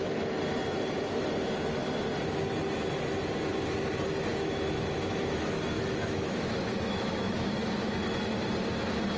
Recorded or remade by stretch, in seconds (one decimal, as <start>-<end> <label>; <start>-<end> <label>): 0.0-4.3 recorded; 4.3-8.3 remade; 8.3-9.2 recorded